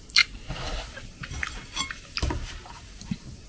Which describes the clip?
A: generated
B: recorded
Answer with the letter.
B